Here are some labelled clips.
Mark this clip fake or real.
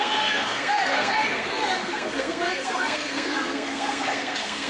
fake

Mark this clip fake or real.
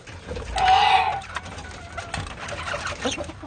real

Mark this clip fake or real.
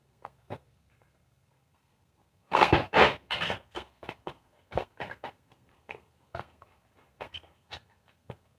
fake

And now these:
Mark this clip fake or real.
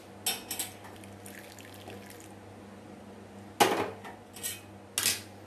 real